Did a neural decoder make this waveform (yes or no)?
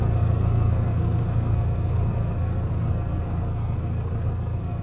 yes